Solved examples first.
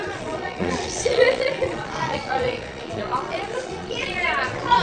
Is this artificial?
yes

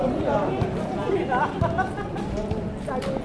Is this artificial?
no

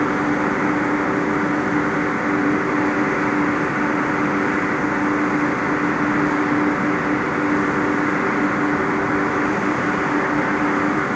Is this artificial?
no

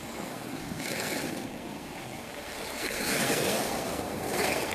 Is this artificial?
yes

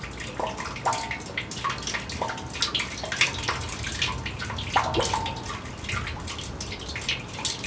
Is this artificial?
no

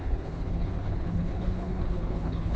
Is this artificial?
yes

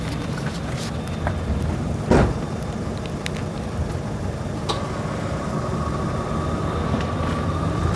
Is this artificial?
no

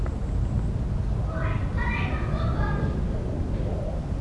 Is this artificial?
no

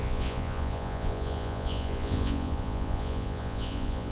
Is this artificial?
yes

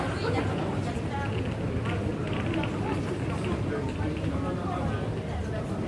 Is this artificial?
no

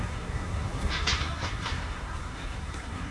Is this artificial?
yes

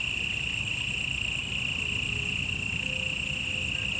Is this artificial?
no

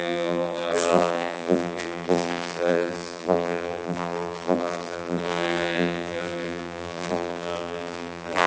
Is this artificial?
yes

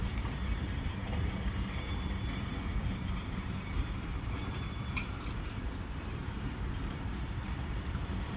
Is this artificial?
yes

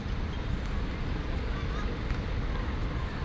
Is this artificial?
no